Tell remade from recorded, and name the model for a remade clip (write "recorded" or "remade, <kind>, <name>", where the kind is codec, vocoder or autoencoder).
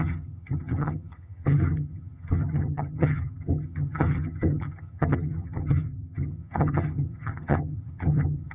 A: remade, vocoder, HiFi-GAN